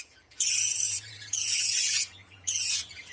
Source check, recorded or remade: remade